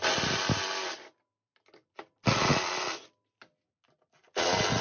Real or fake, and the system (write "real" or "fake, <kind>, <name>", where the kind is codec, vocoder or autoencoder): real